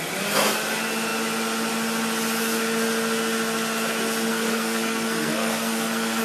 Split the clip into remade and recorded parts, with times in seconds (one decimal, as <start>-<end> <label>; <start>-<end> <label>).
0.0-4.3 recorded; 4.3-6.2 remade